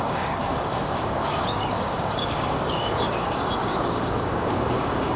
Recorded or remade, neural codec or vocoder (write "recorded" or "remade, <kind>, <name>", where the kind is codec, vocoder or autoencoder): remade, codec, DAC